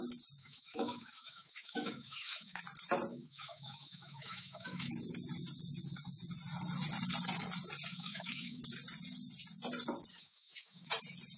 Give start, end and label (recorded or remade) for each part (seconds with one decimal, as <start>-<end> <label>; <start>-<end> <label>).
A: 0.0-0.4 recorded; 0.4-2.6 remade; 2.6-3.1 recorded; 3.1-4.9 remade; 4.9-7.9 recorded; 7.9-8.6 remade; 8.6-10.1 recorded; 10.1-10.9 remade; 10.9-11.4 recorded